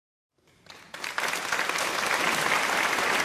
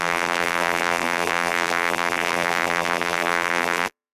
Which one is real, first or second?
first